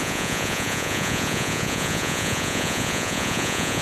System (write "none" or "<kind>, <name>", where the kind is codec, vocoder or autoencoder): vocoder, Vocos